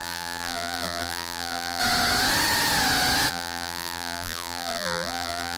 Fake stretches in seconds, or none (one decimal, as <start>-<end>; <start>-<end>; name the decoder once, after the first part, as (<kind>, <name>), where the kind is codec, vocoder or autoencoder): 0.0-1.8 (vocoder, BigVGAN v2); 3.3-5.6